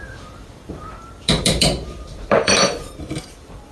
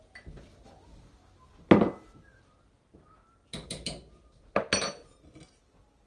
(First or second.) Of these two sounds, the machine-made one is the first